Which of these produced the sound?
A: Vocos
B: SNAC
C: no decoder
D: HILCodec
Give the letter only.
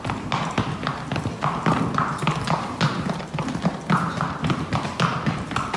C